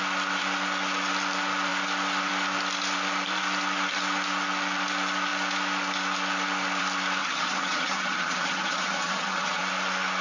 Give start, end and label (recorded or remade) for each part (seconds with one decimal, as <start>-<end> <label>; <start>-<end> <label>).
0.0-7.2 recorded; 7.2-9.6 remade; 9.6-10.2 recorded